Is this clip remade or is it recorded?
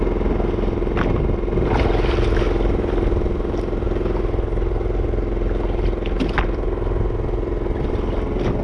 recorded